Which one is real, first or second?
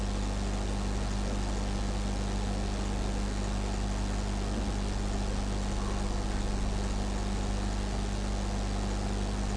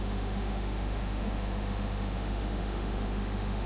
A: first